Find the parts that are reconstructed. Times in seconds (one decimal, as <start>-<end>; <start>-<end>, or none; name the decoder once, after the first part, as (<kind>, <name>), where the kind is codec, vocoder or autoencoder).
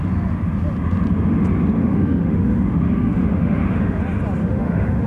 1.8-4.0 (autoencoder, DAC-VAE); 4.4-5.1